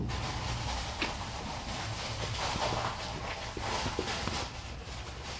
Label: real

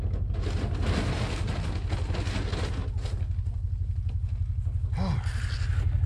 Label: real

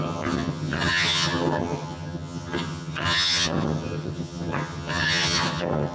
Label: fake